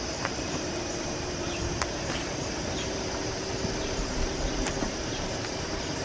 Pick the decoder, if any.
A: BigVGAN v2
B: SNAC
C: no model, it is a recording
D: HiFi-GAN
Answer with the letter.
A